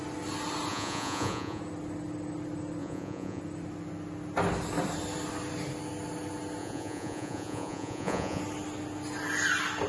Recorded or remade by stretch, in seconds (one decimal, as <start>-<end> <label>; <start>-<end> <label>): 0.0-0.7 recorded; 0.7-1.6 remade; 1.6-2.8 recorded; 2.8-3.4 remade; 3.4-6.6 recorded; 6.6-8.4 remade; 8.4-9.9 recorded